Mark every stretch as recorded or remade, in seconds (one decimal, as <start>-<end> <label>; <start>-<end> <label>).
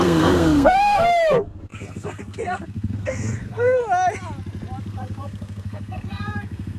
0.0-3.8 remade; 3.8-4.8 recorded; 4.8-6.8 remade